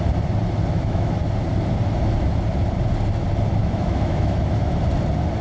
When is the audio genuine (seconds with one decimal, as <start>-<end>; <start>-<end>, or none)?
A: 0.0-0.7; 1.2-3.6; 4.8-5.4